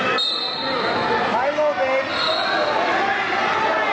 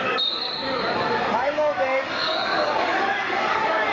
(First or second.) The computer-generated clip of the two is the second